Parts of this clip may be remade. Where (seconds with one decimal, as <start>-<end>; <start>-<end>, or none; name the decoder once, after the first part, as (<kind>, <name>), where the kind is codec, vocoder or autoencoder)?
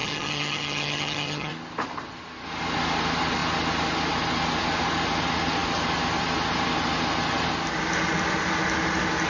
0.0-1.5 (vocoder, HiFi-GAN)